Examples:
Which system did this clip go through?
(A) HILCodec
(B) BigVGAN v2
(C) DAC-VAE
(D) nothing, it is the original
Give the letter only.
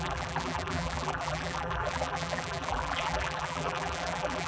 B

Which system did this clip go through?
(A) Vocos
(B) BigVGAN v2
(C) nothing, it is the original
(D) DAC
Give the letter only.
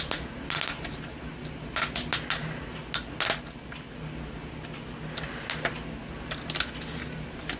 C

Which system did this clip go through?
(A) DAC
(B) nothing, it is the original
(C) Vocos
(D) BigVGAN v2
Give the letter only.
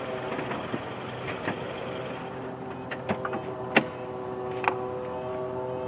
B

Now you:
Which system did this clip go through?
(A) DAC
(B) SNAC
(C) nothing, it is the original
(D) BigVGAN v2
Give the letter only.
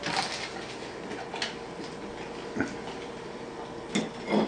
C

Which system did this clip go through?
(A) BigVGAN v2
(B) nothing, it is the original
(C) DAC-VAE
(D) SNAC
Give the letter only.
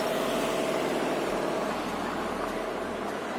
B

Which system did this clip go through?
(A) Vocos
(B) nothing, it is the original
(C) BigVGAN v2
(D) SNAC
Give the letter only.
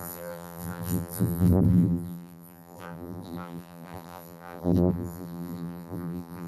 C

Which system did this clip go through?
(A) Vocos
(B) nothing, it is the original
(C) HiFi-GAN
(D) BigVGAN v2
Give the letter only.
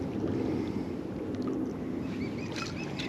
B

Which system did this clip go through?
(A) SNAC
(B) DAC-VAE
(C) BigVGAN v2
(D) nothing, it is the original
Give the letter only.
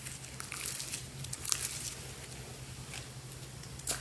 D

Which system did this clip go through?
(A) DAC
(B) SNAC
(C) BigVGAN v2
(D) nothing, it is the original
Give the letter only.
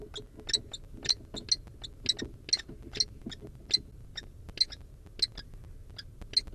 D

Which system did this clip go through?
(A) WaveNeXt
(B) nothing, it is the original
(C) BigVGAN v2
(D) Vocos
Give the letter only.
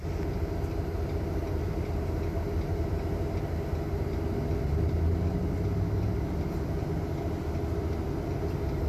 B